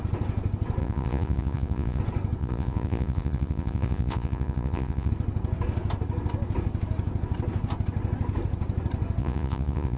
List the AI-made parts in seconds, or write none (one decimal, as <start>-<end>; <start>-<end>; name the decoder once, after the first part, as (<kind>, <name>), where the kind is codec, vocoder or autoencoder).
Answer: 0.8-2.0 (vocoder, Vocos); 2.4-5.1; 9.2-10.0

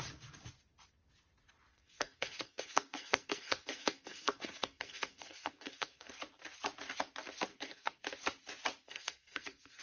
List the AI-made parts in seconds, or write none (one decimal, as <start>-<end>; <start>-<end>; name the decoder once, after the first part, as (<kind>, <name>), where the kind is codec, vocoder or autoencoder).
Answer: 1.7-6.1 (codec, SNAC); 7.5-8.0; 8.8-9.8

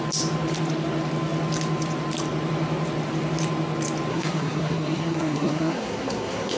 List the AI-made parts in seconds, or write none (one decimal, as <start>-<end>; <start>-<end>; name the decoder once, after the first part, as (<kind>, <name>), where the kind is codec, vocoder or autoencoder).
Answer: 4.1-6.6 (codec, SNAC)